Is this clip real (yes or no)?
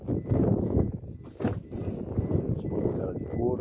yes